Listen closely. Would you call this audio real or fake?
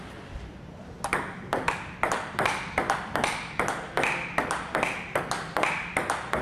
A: real